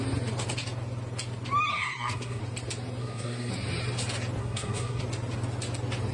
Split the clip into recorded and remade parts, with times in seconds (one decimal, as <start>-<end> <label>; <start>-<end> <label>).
0.0-1.7 recorded; 1.7-2.4 remade; 2.4-3.0 recorded; 3.0-3.5 remade; 3.5-4.4 recorded; 4.4-5.0 remade; 5.0-6.1 recorded